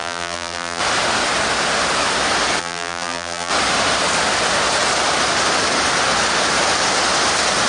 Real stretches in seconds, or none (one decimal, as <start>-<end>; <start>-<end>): 0.8-2.6; 3.5-7.7